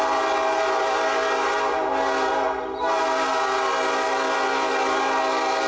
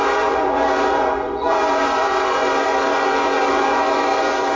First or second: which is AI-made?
second